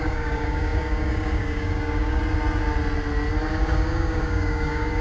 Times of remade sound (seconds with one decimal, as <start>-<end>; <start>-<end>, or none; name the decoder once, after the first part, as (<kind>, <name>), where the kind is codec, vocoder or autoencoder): 0.0-2.2 (codec, DAC); 3.5-5.0